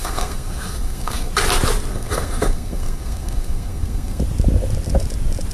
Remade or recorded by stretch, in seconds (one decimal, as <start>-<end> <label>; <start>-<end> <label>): 0.0-1.3 remade; 1.3-1.9 recorded; 1.9-4.2 remade; 4.2-5.5 recorded